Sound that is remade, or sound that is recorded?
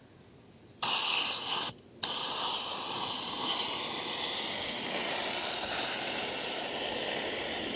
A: recorded